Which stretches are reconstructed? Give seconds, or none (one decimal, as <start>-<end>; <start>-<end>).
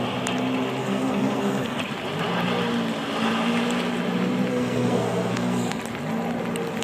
0.8-1.8; 4.5-5.8